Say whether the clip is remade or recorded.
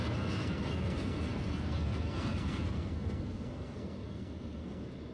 remade